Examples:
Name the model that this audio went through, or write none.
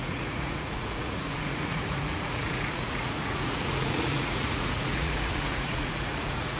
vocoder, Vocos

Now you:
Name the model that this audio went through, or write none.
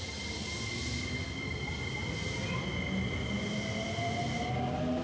none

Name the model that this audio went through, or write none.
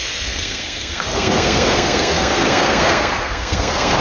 codec, SNAC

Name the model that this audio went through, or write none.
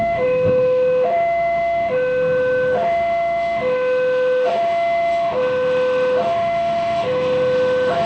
autoencoder, DAC-VAE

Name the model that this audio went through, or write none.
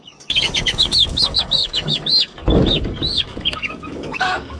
codec, DAC